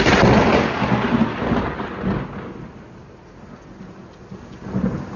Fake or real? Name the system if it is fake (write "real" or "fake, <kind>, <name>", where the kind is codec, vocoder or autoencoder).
real